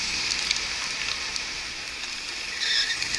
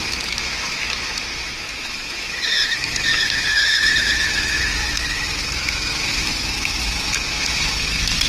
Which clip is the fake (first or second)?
second